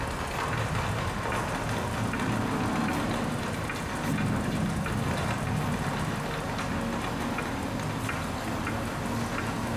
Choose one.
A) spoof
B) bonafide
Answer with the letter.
B